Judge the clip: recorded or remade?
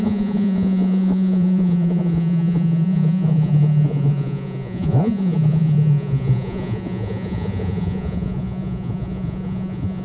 remade